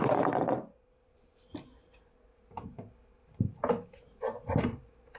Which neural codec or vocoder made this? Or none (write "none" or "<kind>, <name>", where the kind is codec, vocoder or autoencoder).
vocoder, BigVGAN v2